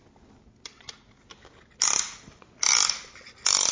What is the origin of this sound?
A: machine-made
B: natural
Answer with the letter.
B